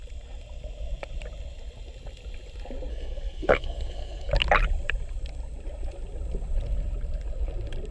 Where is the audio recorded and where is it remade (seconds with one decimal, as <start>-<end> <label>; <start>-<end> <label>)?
0.0-2.9 recorded; 2.9-4.3 remade; 4.3-7.9 recorded

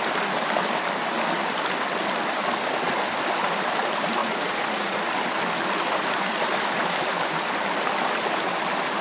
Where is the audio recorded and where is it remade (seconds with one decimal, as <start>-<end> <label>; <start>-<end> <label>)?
0.0-4.2 recorded; 4.2-5.1 remade; 5.1-9.0 recorded

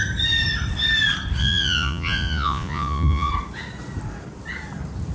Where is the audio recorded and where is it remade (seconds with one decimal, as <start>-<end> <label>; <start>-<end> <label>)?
0.0-1.4 recorded; 1.4-3.3 remade; 3.3-5.1 recorded

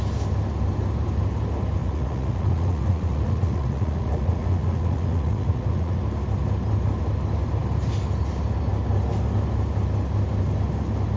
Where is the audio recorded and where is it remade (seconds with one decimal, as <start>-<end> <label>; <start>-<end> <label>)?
0.0-1.8 recorded; 1.8-6.0 remade; 6.0-11.2 recorded

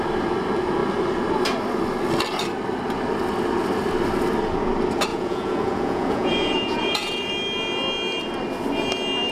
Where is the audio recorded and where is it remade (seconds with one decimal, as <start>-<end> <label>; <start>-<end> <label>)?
0.0-5.1 recorded; 5.1-7.3 remade; 7.3-9.3 recorded

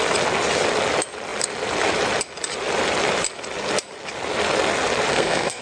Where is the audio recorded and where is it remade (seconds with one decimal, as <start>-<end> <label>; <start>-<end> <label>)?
0.0-5.1 recorded; 5.1-5.6 remade

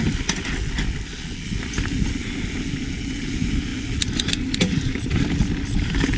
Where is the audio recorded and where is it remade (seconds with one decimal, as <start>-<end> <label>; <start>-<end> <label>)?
0.0-6.2 recorded